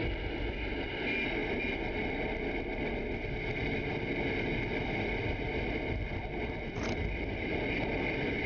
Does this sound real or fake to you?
real